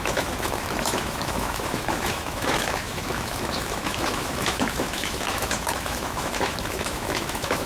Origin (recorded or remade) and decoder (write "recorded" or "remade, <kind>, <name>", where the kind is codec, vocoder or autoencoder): remade, autoencoder, DAC-VAE